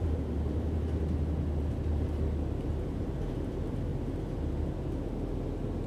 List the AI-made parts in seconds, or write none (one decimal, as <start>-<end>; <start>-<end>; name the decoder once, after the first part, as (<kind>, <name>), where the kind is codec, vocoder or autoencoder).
0.0-0.8 (vocoder, BigVGAN v2); 2.9-3.9